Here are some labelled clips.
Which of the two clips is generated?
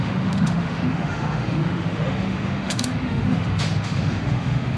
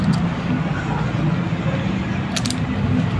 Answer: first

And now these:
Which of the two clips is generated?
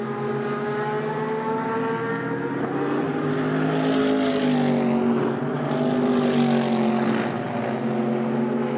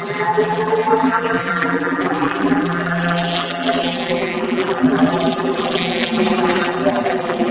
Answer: second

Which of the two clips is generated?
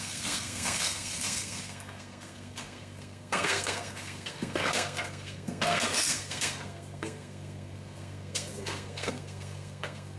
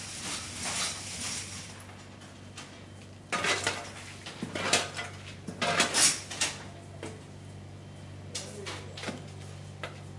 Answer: first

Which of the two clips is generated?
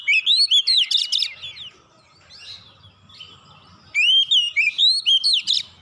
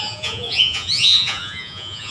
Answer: second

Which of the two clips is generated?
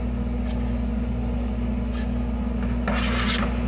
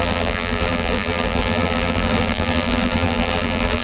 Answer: second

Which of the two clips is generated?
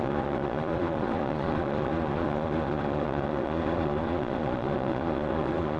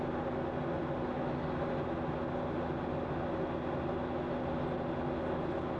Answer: first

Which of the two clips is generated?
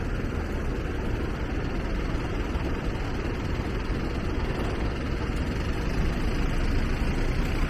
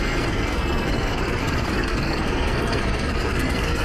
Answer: second